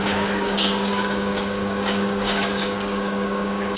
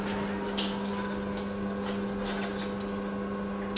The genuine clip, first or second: second